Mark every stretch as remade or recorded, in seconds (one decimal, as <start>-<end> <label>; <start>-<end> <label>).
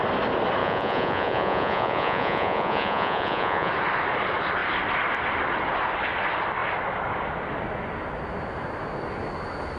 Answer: 0.0-0.6 recorded; 0.6-3.7 remade; 3.7-9.8 recorded